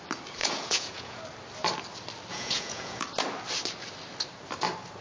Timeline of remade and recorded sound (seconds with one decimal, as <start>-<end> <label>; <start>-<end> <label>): 0.0-0.4 recorded; 0.4-1.2 remade; 1.2-2.3 recorded; 2.3-3.0 remade; 3.0-5.0 recorded